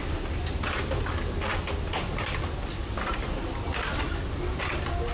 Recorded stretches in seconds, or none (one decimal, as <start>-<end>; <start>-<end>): 0.0-5.1